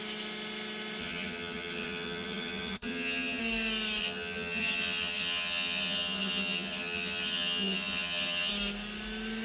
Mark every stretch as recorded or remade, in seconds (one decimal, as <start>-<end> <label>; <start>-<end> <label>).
0.0-1.0 recorded; 1.0-3.4 remade; 3.4-4.0 recorded; 4.0-8.5 remade; 8.5-9.4 recorded